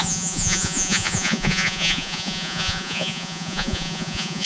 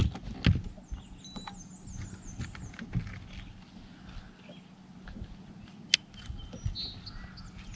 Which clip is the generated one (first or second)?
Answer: first